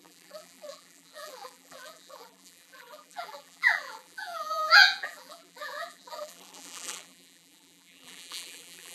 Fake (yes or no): yes